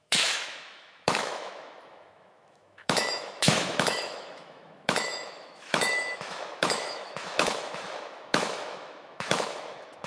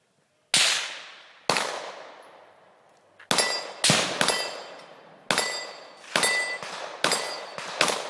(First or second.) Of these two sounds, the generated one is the first